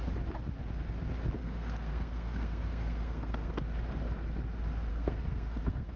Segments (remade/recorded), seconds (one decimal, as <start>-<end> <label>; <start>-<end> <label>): 0.0-1.4 recorded; 1.4-3.6 remade; 3.6-4.9 recorded; 4.9-6.0 remade